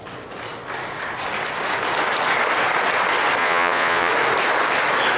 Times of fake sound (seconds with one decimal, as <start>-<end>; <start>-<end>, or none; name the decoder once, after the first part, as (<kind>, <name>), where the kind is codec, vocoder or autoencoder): 3.4-4.1 (vocoder, Vocos)